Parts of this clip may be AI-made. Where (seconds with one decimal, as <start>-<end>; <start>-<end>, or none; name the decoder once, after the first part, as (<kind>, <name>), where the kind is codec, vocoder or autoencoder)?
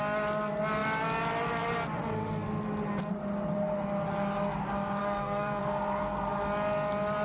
5.0-5.6 (codec, SNAC)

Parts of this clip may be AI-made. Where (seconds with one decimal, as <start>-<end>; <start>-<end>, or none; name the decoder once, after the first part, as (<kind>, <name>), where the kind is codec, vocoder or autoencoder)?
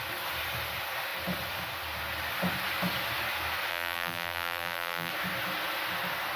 3.7-5.1 (vocoder, BigVGAN v2)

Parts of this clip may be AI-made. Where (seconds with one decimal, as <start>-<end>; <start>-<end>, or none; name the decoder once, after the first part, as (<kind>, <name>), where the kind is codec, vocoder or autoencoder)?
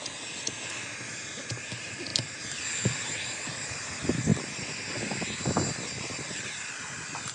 none